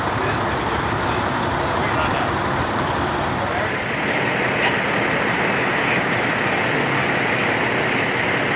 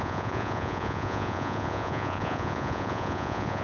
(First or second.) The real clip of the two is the first